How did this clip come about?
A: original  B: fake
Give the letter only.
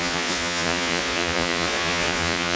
B